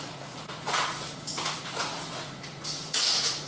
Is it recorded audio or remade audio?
remade